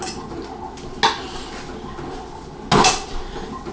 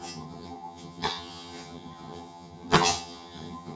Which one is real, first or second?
first